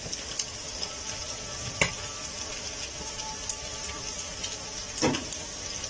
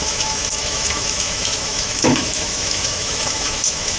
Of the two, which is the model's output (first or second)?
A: second